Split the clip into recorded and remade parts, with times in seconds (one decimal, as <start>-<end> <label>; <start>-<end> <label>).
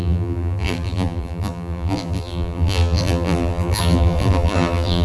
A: 0.0-5.0 remade